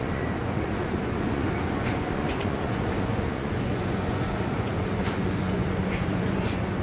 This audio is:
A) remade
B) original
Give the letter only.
A